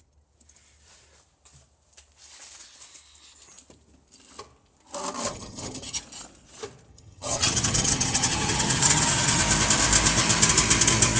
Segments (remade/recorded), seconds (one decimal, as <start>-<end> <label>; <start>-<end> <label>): 0.0-5.3 recorded; 5.3-6.0 remade; 6.0-6.9 recorded; 6.9-9.4 remade; 9.4-11.2 recorded

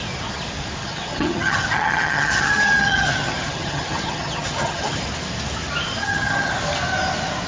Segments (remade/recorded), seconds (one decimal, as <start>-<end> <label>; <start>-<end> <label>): 0.0-0.8 recorded; 0.8-5.0 remade; 5.0-6.0 recorded; 6.0-6.5 remade; 6.5-7.5 recorded

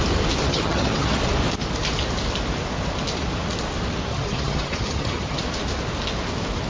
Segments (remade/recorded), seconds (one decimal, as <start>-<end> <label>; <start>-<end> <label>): 0.0-0.4 recorded; 0.4-1.2 remade; 1.2-4.1 recorded; 4.1-5.4 remade; 5.4-6.7 recorded

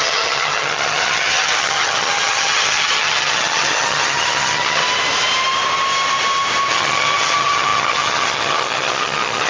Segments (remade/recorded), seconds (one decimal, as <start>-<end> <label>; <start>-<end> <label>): 0.0-4.8 remade; 4.8-6.7 recorded; 6.7-9.5 remade

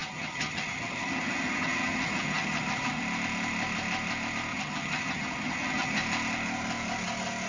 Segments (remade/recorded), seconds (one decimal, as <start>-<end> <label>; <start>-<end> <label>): 0.0-3.0 remade; 3.0-4.5 recorded; 4.5-6.0 remade; 6.0-7.5 recorded

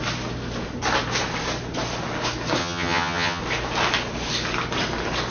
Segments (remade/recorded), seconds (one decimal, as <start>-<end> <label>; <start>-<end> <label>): 0.0-2.6 recorded; 2.6-3.4 remade; 3.4-5.3 recorded